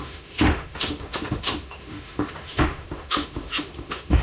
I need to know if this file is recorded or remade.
remade